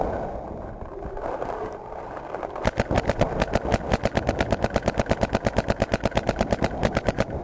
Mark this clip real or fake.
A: real